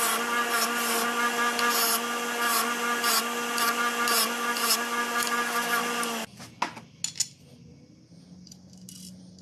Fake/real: real